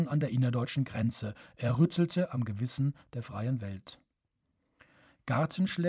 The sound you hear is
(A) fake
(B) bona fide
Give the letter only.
A